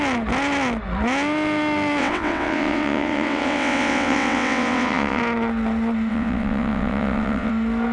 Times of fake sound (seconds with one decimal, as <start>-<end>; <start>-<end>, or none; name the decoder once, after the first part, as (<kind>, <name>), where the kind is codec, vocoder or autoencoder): 2.0-5.2 (vocoder, WaveNeXt); 6.1-7.5